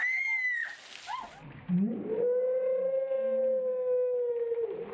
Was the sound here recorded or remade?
recorded